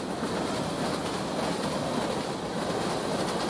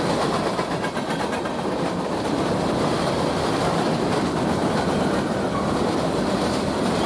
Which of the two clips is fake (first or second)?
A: second